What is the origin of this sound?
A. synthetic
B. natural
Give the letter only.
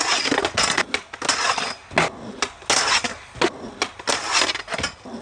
B